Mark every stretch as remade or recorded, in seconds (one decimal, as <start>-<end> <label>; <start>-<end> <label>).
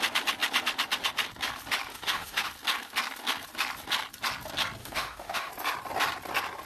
0.0-1.9 recorded; 1.9-2.5 remade; 2.5-4.8 recorded; 4.8-5.5 remade; 5.5-6.7 recorded